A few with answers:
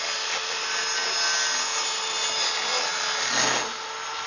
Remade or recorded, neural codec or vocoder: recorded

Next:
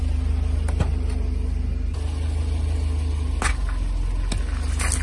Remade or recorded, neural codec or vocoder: recorded